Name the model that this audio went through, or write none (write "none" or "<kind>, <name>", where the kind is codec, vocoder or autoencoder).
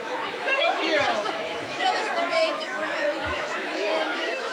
autoencoder, DAC-VAE